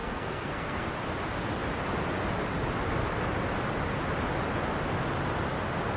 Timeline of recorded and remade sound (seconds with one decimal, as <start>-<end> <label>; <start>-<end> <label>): 0.0-0.9 remade; 0.9-6.0 recorded